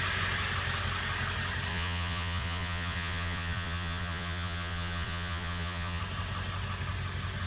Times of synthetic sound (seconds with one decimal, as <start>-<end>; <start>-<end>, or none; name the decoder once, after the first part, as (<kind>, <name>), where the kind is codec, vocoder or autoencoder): 1.7-6.0 (vocoder, Vocos)